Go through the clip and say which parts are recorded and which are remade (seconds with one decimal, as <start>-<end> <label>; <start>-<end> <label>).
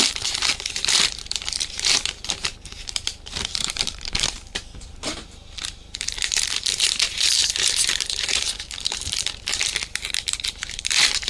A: 0.0-11.3 remade